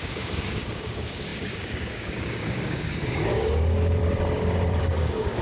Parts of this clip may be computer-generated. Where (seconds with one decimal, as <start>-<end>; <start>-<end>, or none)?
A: 0.0-4.0; 4.8-5.4

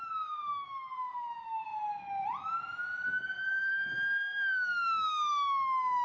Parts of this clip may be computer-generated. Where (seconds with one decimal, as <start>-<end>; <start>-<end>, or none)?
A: 0.0-1.7; 3.2-6.0

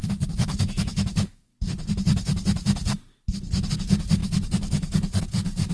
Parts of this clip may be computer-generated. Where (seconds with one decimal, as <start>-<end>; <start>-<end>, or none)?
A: 0.0-1.5; 3.7-5.7

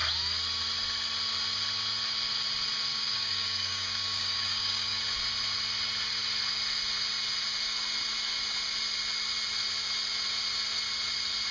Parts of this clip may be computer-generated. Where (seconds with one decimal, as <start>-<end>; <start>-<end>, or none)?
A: 2.9-5.0

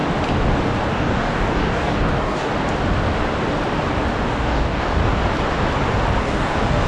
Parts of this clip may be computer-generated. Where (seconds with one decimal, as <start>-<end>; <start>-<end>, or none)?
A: 0.9-2.5; 4.3-5.0; 6.2-6.9

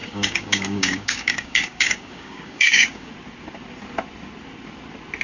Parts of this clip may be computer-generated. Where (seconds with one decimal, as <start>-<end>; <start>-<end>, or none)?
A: 0.0-3.1